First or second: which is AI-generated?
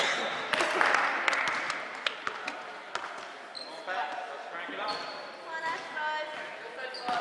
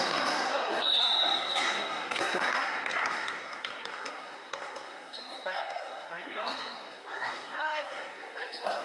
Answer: second